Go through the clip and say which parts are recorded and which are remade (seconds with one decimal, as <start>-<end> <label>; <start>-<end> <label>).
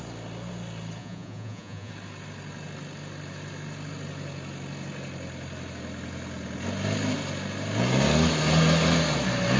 0.0-1.0 recorded; 1.0-1.9 remade; 1.9-9.6 recorded